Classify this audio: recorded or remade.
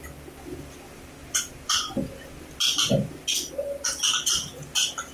recorded